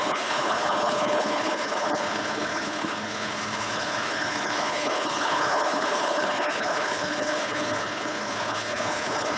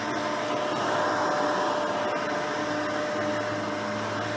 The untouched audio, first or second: second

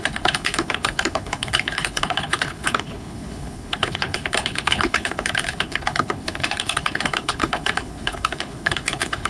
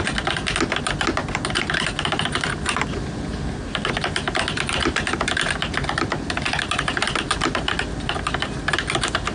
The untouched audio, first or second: second